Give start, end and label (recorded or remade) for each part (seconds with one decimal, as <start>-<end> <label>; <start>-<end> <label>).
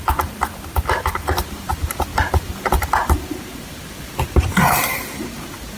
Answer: 0.0-5.8 remade